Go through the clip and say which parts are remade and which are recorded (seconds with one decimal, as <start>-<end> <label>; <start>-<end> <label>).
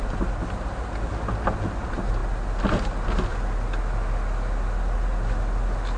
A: 0.0-6.0 recorded